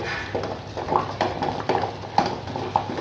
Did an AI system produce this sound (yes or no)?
no